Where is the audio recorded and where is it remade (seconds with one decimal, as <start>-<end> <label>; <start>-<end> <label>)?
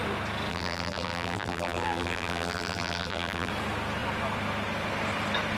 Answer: 0.0-0.5 recorded; 0.5-3.5 remade; 3.5-5.6 recorded